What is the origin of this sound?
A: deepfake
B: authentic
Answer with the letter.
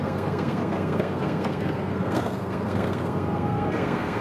A